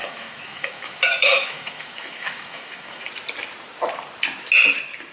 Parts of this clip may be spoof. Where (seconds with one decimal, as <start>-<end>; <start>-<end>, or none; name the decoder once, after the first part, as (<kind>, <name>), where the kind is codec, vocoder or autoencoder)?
0.0-3.1 (autoencoder, DAC-VAE)